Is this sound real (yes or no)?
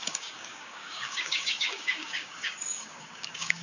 no